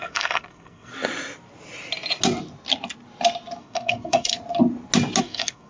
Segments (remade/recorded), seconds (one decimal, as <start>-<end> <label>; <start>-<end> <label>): 0.0-0.9 remade; 0.9-3.6 recorded; 3.6-4.3 remade; 4.3-5.2 recorded; 5.2-5.7 remade